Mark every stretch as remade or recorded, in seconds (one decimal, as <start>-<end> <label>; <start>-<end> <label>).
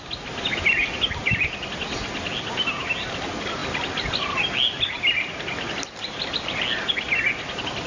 0.0-7.9 recorded